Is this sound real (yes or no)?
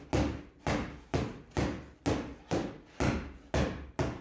yes